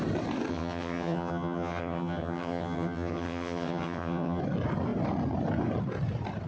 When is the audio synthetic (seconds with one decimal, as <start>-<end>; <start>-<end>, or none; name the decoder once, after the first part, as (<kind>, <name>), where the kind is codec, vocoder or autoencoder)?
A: 0.5-4.4 (vocoder, HiFi-GAN)